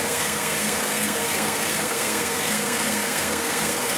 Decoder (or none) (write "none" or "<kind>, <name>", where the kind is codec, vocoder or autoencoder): codec, SNAC